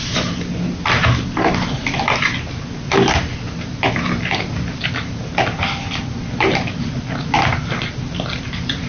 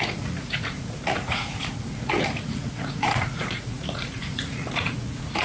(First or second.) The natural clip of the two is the first